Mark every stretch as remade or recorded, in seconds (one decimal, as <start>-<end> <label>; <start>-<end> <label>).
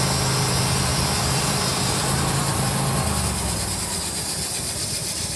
0.0-5.4 recorded